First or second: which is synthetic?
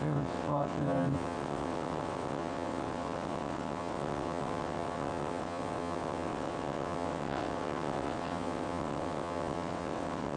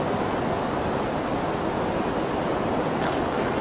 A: first